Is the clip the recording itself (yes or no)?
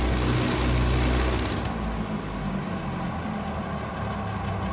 yes